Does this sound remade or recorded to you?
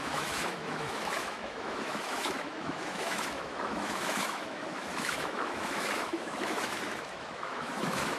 remade